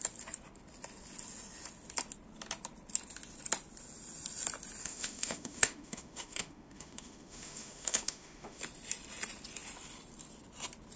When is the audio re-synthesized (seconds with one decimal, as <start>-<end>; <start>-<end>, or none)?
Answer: 4.8-8.6